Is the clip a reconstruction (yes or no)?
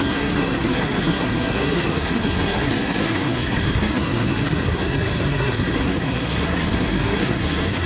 yes